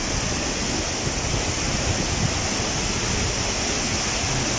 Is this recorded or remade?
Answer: recorded